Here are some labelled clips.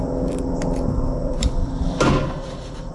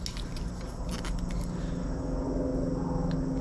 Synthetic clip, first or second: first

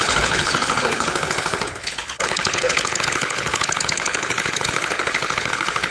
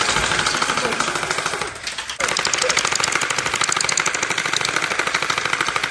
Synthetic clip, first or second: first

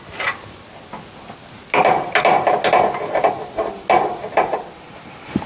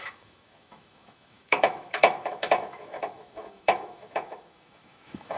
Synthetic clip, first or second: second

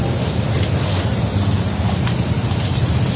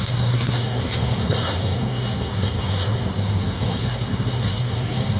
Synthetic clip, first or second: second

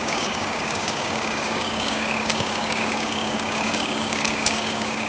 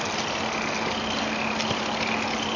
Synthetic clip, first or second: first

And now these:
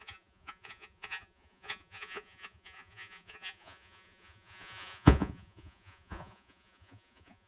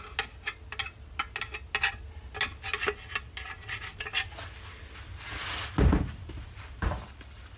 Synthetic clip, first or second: first